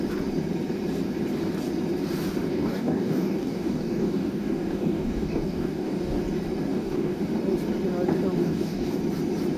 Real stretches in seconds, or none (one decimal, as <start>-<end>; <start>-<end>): 0.0-2.5; 6.2-6.7; 7.2-8.4; 9.0-9.6